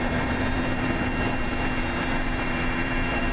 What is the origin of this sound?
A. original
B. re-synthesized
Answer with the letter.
B